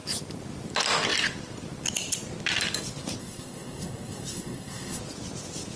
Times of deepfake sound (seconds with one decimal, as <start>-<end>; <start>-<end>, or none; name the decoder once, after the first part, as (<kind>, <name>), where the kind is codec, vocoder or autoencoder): 3.2-5.0 (codec, SNAC)